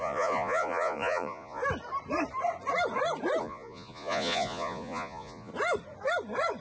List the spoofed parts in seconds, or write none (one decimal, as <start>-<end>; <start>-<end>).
0.0-1.6; 3.4-5.5